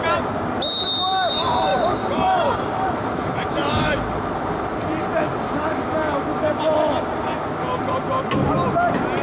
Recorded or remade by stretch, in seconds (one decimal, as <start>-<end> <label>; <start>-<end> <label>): 0.0-1.7 recorded; 1.7-5.8 remade; 5.8-9.2 recorded